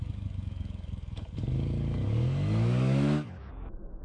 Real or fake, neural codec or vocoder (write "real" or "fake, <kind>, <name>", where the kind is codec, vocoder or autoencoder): fake, codec, DAC